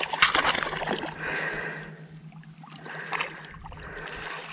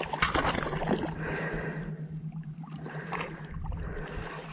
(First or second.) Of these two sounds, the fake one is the second